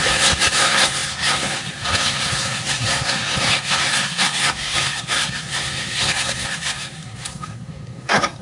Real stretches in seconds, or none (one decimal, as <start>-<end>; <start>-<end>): none